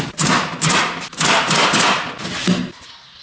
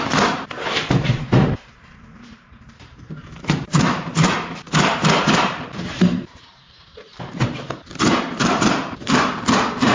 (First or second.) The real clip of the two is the first